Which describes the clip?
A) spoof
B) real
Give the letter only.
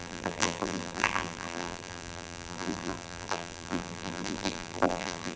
A